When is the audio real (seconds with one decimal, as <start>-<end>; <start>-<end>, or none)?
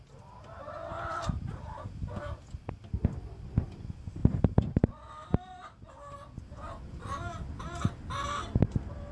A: 0.0-1.1; 1.8-4.2; 4.9-9.1